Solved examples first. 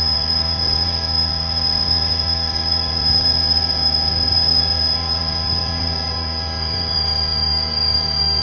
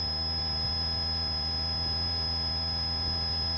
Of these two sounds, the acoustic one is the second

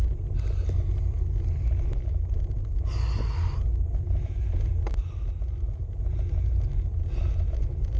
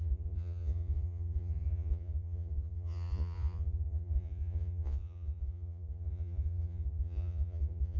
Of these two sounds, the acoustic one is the first